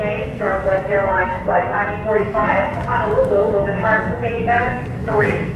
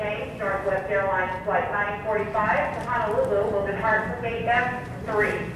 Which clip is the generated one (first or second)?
first